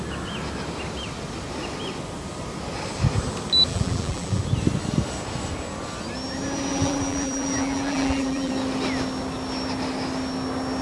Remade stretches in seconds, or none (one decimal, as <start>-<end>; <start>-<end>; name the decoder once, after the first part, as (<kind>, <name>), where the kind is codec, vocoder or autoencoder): 3.7-4.4 (vocoder, BigVGAN v2); 6.7-8.5